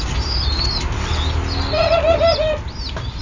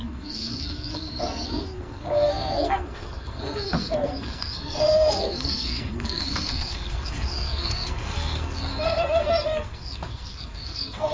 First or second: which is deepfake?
second